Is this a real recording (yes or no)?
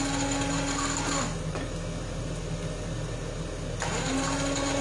yes